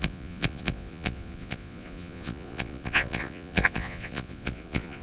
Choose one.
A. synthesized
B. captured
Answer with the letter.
A